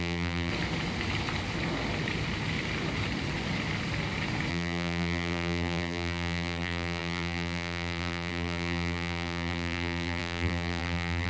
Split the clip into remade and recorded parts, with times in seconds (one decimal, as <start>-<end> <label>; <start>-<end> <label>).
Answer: 0.0-0.5 remade; 0.5-4.5 recorded; 4.5-11.3 remade